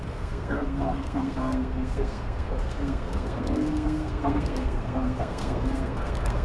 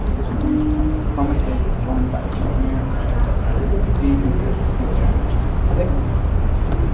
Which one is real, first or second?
second